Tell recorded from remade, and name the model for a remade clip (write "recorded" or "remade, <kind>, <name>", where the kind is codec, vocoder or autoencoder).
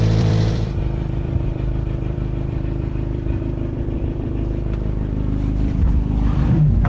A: remade, vocoder, BigVGAN v2